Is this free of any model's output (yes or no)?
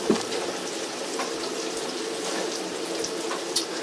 yes